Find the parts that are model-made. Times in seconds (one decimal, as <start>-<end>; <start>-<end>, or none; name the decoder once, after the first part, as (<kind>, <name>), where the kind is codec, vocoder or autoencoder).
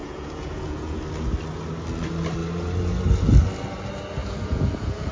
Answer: 0.0-1.0 (vocoder, Vocos); 4.2-5.1